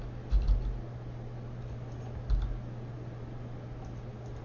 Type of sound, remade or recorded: recorded